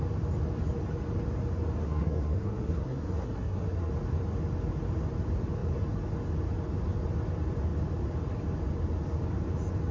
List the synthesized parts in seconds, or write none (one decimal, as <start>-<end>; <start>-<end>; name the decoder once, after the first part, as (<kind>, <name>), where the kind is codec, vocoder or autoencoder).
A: 1.8-3.9 (codec, SNAC)